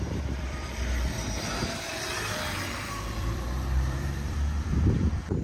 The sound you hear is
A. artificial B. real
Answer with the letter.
A